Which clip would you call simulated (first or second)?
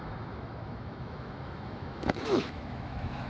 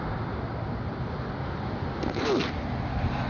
first